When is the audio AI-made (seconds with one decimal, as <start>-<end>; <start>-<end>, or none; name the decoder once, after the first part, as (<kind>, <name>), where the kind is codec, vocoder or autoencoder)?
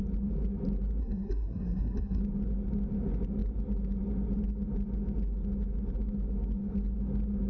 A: 1.0-2.2 (codec, SNAC)